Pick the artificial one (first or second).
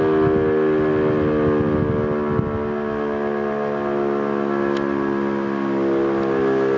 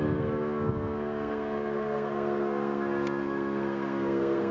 second